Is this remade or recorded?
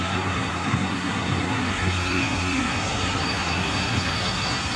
remade